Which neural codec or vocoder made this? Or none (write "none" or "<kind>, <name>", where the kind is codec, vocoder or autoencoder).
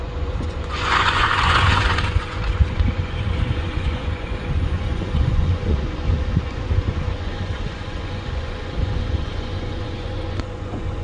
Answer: vocoder, Vocos